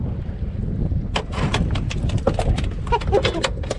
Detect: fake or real real